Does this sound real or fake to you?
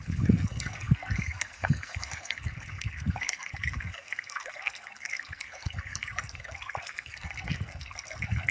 fake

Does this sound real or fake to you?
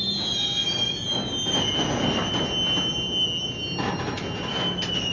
real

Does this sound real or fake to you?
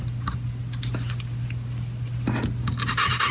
real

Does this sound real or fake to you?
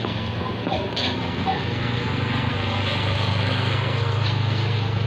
fake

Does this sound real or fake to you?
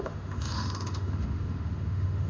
fake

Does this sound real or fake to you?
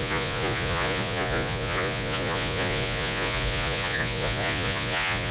fake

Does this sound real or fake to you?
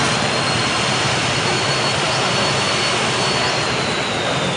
real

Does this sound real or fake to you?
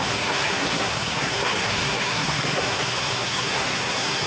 fake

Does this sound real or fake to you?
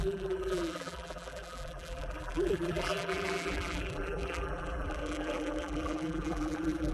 fake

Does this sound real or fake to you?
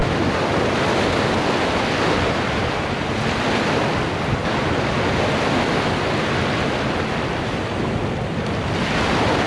real